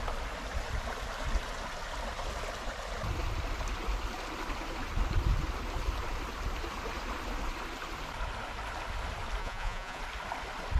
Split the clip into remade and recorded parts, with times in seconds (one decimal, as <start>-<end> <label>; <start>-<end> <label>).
0.0-9.4 recorded; 9.4-10.0 remade; 10.0-10.8 recorded